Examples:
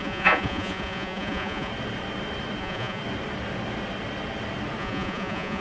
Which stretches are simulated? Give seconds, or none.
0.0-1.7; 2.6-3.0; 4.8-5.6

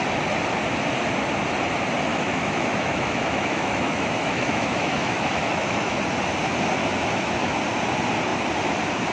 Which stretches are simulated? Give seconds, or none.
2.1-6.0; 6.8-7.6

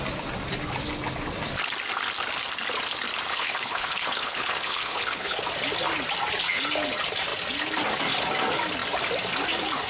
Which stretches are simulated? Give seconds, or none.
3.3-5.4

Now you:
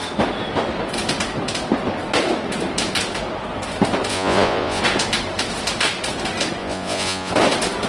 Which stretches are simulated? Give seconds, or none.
4.1-4.8; 6.6-7.3

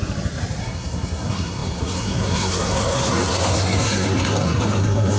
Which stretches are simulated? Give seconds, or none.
0.6-5.2

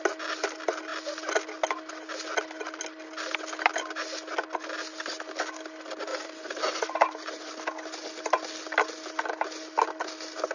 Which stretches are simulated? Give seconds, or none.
6.1-7.5

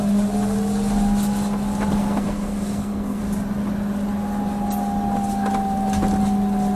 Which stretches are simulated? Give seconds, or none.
1.9-3.2